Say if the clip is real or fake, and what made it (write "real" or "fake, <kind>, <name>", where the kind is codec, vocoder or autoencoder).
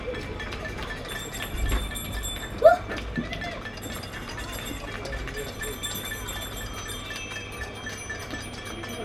real